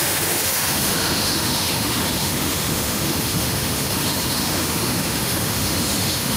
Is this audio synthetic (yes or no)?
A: yes